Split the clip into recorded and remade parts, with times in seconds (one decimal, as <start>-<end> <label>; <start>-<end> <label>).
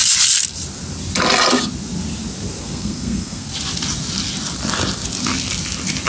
0.0-2.6 recorded; 2.6-3.5 remade; 3.5-6.1 recorded